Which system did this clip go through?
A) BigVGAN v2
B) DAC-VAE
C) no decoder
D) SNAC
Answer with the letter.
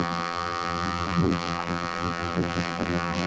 A